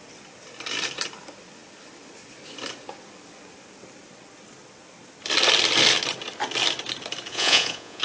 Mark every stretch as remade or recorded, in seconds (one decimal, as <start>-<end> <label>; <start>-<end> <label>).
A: 0.0-7.3 recorded; 7.3-8.0 remade